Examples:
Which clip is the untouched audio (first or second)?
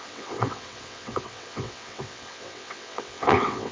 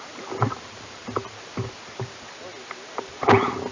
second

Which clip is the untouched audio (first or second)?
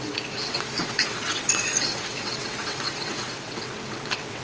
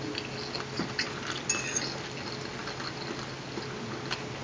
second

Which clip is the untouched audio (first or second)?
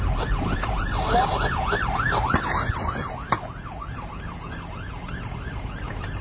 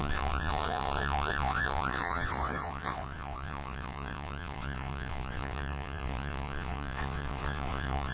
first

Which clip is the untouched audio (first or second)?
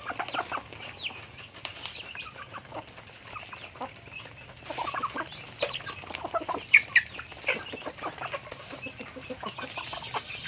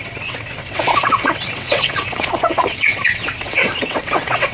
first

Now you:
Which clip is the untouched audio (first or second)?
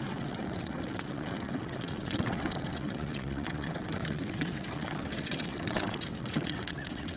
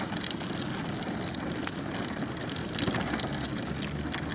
second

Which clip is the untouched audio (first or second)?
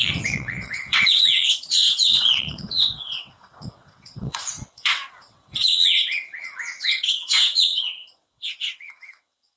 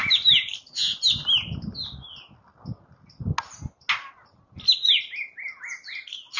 second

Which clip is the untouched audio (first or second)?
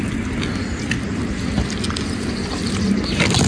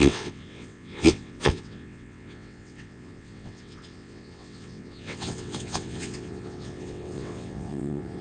first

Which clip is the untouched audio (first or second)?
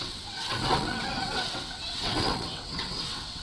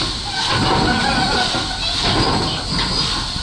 second